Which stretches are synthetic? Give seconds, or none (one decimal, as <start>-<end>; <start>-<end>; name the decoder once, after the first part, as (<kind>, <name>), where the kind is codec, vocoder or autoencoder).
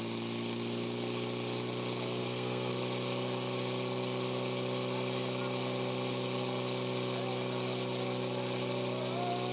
2.2-2.7 (codec, SNAC)